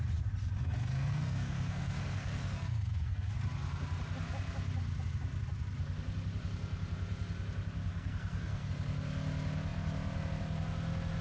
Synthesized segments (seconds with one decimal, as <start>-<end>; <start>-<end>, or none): 0.6-3.3; 7.9-8.7